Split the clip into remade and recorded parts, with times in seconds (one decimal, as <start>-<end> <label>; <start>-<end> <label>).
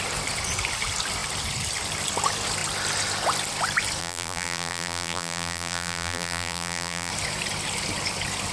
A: 0.0-4.0 recorded; 4.0-7.1 remade; 7.1-8.5 recorded